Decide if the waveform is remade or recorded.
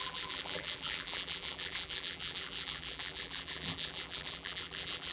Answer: remade